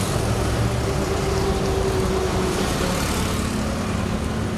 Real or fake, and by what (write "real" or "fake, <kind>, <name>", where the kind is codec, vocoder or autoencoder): real